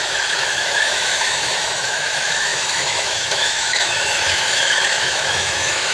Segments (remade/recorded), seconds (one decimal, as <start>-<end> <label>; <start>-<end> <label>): 0.0-5.9 remade